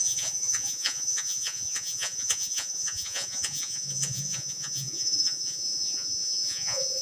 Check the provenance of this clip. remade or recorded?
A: remade